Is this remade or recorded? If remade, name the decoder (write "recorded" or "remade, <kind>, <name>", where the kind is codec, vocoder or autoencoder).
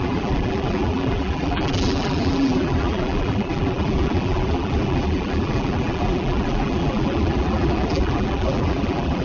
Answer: remade, vocoder, BigVGAN v2